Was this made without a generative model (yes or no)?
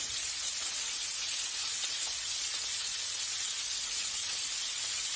no